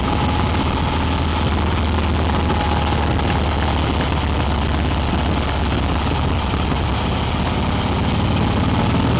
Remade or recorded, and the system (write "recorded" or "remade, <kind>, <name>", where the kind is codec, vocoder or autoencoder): recorded